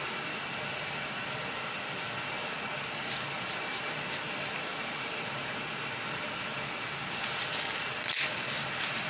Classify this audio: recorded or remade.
recorded